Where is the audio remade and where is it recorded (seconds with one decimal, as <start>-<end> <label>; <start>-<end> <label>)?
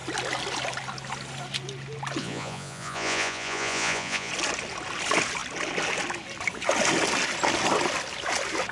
0.0-2.2 recorded; 2.2-4.3 remade; 4.3-8.7 recorded